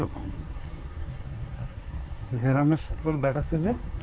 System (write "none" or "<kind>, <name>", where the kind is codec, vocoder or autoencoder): codec, SNAC